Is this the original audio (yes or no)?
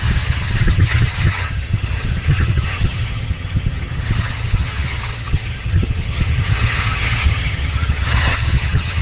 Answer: no